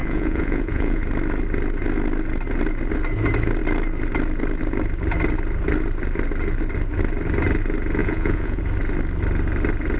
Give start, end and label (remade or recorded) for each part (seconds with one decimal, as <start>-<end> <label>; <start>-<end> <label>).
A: 0.0-1.0 remade; 1.0-8.0 recorded; 8.0-8.6 remade; 8.6-10.0 recorded